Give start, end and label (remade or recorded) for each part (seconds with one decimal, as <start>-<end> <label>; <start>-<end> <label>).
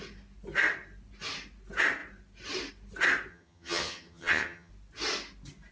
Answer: 0.0-3.3 recorded; 3.3-4.7 remade; 4.7-5.7 recorded